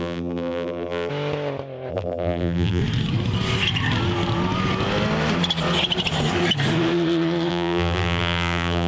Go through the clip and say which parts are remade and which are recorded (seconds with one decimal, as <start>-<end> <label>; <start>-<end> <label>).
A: 0.0-1.1 remade; 1.1-1.9 recorded; 1.9-2.8 remade; 2.8-7.5 recorded; 7.5-8.9 remade